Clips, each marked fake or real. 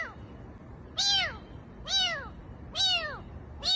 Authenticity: real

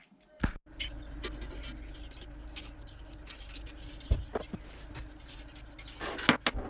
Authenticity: real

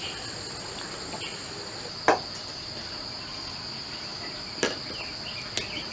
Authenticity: real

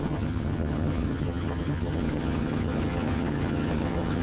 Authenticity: fake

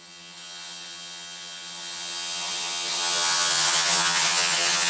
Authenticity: fake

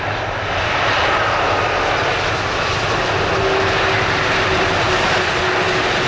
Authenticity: real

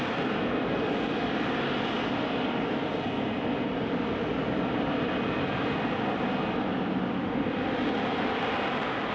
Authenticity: real